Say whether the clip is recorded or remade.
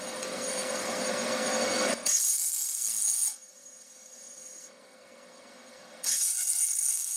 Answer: remade